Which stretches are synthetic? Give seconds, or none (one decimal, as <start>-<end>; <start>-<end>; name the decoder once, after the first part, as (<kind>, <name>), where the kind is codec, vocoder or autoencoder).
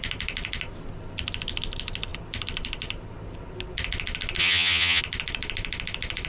4.4-5.0 (vocoder, HiFi-GAN)